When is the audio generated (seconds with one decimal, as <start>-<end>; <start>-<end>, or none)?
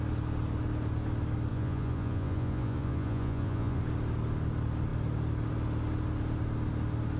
1.5-3.8